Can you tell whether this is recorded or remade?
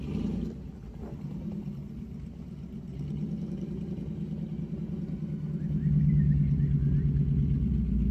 recorded